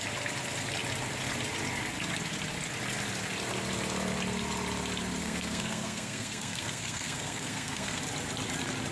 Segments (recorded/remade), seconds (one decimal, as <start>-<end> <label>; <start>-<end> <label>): 0.0-5.2 recorded; 5.2-8.0 remade; 8.0-8.9 recorded